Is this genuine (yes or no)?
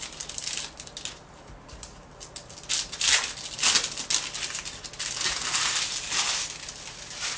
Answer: yes